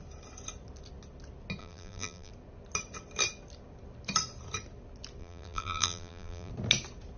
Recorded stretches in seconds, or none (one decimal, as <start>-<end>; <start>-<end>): 0.0-1.6; 2.3-5.2; 6.5-7.2